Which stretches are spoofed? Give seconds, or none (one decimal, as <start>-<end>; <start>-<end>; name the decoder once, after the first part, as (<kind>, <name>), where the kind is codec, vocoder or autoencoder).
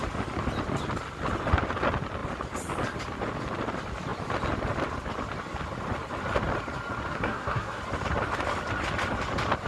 7.1-7.8 (codec, SNAC)